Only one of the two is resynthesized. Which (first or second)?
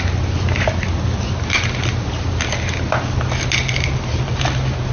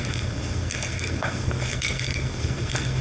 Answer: second